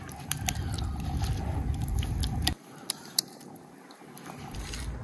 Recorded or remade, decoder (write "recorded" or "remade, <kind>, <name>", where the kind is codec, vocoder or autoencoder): recorded